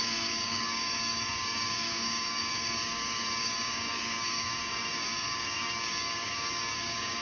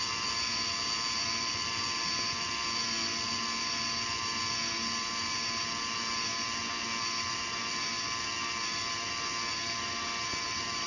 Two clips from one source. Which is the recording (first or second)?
second